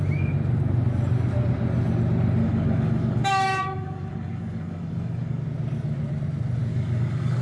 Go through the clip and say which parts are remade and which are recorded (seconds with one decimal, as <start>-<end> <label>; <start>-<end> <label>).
0.0-2.4 recorded; 2.4-5.4 remade; 5.4-6.7 recorded; 6.7-7.4 remade